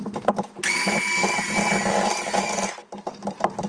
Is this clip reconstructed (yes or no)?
no